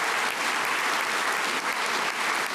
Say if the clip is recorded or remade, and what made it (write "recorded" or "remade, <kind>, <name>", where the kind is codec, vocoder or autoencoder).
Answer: recorded